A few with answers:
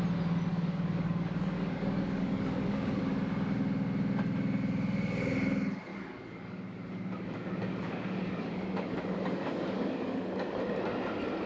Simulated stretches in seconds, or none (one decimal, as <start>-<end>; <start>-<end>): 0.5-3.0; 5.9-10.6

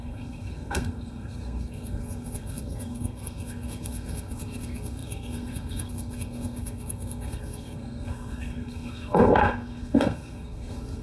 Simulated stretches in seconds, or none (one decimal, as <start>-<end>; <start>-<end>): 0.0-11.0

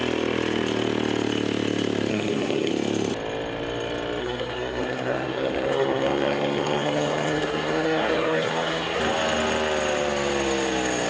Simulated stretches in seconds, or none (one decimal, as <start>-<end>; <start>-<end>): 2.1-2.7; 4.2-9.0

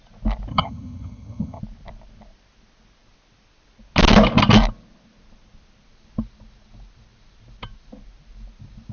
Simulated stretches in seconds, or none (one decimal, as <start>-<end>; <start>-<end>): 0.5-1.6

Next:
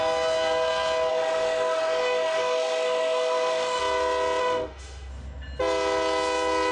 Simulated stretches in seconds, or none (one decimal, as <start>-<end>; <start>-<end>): 1.1-3.8; 4.4-5.1

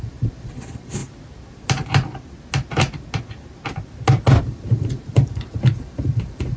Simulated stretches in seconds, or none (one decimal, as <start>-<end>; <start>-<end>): 0.0-1.0; 4.4-6.6

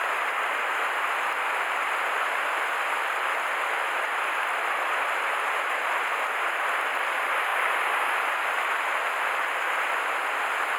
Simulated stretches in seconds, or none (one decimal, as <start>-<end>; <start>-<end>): none

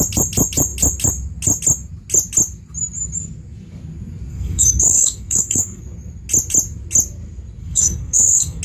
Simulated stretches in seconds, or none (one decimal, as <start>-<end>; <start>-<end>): 4.3-5.8; 7.6-8.6